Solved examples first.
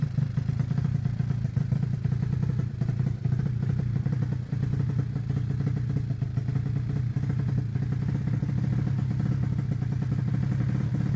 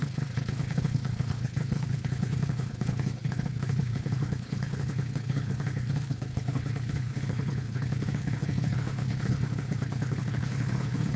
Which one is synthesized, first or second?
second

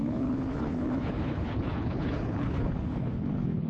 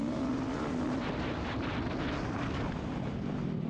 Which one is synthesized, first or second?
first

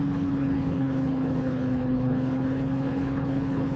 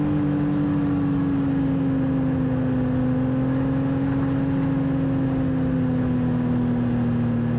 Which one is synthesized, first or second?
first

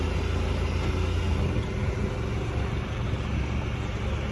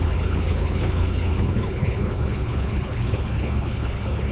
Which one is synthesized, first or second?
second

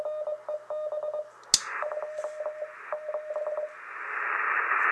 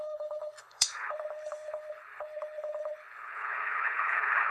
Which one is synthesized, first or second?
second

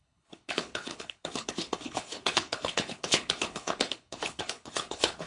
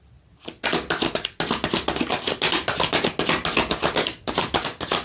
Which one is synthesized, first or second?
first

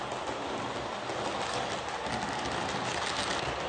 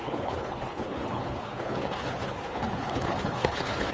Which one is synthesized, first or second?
second